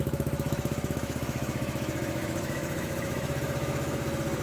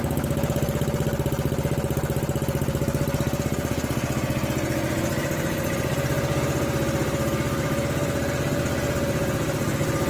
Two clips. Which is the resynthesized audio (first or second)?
first